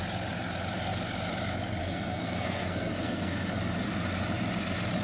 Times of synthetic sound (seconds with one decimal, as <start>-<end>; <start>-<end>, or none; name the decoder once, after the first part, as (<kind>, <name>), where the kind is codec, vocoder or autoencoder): 1.8-3.5 (codec, SNAC)